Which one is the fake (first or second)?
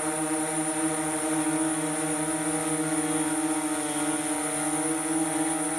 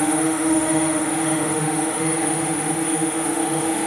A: second